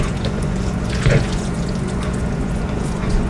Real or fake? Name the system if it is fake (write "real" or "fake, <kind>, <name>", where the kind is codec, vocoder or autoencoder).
fake, vocoder, Vocos